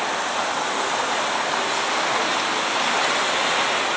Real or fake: real